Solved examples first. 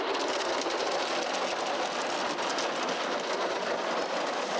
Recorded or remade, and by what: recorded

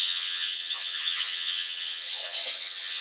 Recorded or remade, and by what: remade, vocoder, HiFi-GAN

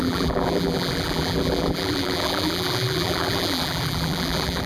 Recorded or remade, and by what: remade, vocoder, BigVGAN v2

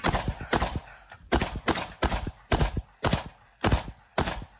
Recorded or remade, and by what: remade, vocoder, BigVGAN v2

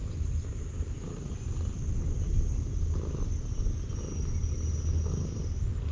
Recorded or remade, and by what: recorded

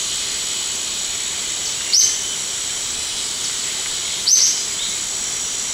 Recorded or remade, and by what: recorded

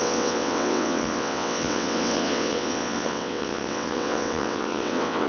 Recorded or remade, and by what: remade, vocoder, WaveNeXt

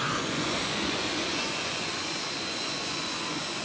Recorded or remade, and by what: remade, vocoder, Vocos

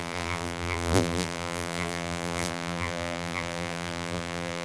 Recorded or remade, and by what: remade, vocoder, BigVGAN v2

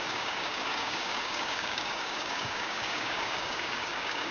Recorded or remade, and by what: remade, codec, DAC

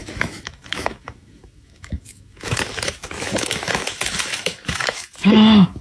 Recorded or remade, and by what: remade, autoencoder, DAC-VAE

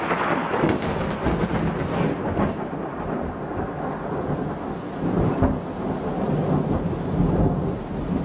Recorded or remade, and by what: recorded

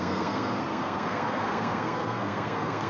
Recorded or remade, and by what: remade, codec, SNAC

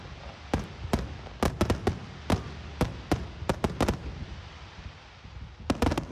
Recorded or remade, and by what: recorded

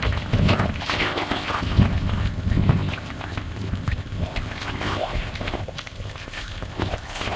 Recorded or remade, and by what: remade, codec, ZipCodec